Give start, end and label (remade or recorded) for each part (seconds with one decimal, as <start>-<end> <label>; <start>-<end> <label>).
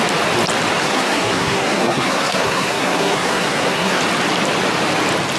0.0-0.8 recorded; 0.8-4.0 remade; 4.0-5.4 recorded